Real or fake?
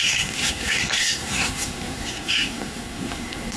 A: fake